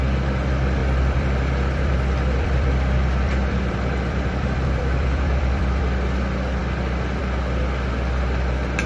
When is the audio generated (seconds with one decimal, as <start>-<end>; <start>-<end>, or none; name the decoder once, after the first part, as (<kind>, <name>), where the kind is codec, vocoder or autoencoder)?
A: 0.8-5.8 (vocoder, BigVGAN v2)